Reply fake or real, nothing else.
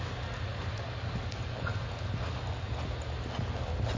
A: real